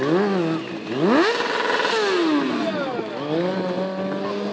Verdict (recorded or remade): recorded